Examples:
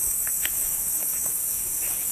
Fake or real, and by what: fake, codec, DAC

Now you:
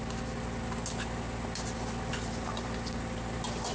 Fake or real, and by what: real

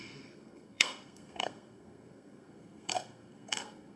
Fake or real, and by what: fake, codec, SNAC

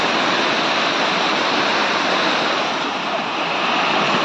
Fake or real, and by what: real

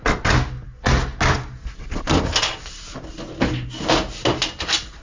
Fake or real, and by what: real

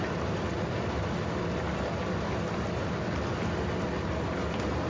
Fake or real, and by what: real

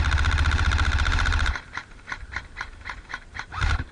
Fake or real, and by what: fake, vocoder, BigVGAN v2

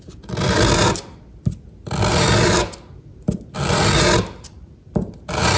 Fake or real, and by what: real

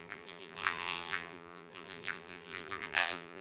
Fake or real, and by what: fake, vocoder, BigVGAN v2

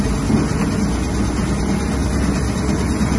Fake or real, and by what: real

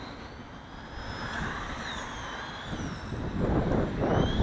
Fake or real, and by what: real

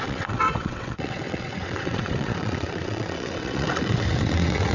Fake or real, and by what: fake, vocoder, WaveNeXt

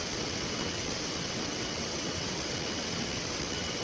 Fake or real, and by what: fake, vocoder, WaveNeXt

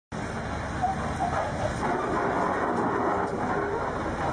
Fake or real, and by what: real